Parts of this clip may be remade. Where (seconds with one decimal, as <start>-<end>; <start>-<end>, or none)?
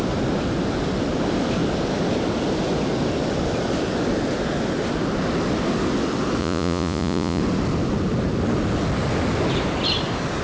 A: 6.4-7.4